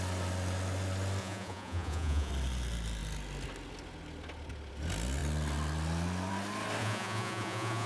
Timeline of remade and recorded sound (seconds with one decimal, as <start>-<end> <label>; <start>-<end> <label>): 0.0-1.2 recorded; 1.2-2.3 remade; 2.3-6.8 recorded; 6.8-7.9 remade